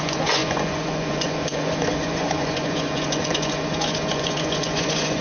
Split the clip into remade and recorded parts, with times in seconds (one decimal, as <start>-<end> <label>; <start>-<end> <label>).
0.0-5.2 remade